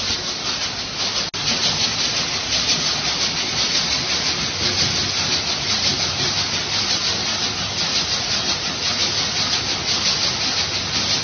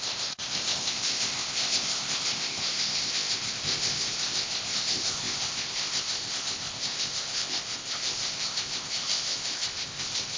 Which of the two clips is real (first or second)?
first